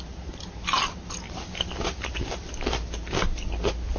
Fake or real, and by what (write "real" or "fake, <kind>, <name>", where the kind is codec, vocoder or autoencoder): real